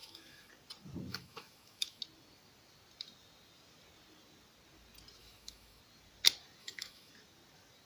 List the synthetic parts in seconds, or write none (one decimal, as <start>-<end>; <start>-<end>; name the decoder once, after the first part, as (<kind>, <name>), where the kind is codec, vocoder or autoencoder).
0.0-0.5 (autoencoder, DAC-VAE); 1.1-2.0; 5.2-5.8; 6.6-7.1